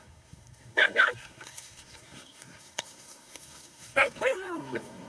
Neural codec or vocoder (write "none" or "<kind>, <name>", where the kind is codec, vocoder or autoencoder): codec, SNAC